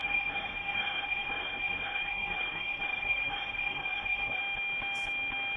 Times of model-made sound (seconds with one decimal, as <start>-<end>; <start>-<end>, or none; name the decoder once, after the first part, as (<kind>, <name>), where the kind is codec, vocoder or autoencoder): 0.0-4.4 (codec, SNAC)